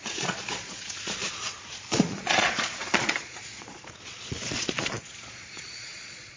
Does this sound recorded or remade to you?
remade